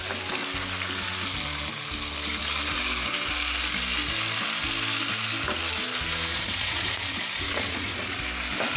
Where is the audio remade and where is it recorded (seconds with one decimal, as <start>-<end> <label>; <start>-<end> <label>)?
0.0-6.3 recorded; 6.3-8.2 remade; 8.2-8.8 recorded